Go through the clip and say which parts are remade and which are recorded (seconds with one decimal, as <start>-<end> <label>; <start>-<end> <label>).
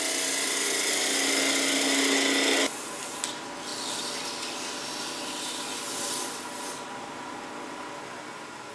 0.0-8.7 recorded